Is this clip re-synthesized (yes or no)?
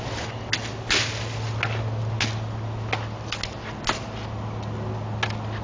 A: no